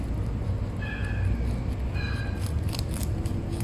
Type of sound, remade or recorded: recorded